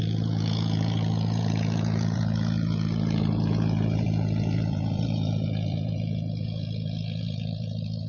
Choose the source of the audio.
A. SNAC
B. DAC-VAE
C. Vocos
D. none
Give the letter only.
C